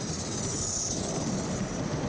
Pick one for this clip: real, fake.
real